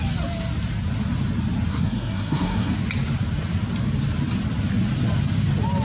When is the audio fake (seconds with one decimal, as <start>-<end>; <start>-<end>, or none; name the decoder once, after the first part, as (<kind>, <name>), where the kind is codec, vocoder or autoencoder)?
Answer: 1.7-2.7 (codec, SNAC)